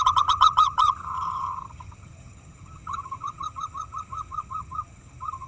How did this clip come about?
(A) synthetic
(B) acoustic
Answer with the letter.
A